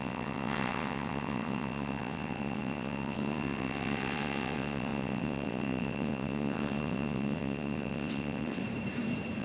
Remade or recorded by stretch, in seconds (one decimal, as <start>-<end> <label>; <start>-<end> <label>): 0.0-8.6 remade; 8.6-9.4 recorded